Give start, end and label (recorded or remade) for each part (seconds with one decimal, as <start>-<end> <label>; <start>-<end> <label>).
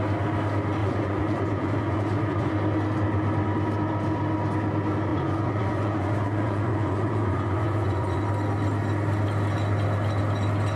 0.0-0.8 recorded; 0.8-2.5 remade; 2.5-5.1 recorded; 5.1-8.2 remade; 8.2-10.8 recorded